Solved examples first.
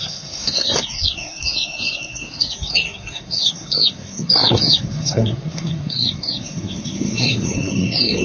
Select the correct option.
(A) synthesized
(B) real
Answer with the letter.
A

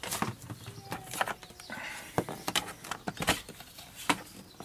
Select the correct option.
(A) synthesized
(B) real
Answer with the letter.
B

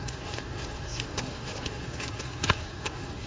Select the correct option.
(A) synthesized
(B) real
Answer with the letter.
A